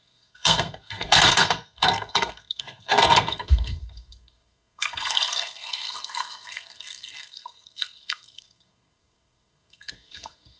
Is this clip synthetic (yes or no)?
yes